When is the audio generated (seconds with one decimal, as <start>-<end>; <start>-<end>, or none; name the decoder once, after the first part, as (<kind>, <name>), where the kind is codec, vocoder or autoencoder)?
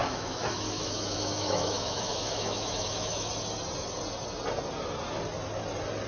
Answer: 0.0-3.3 (autoencoder, DAC-VAE)